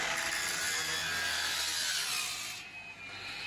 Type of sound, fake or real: real